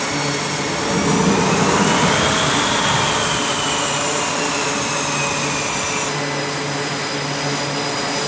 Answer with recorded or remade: recorded